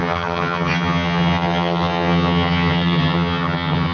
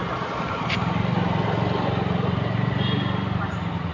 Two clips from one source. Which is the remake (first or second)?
first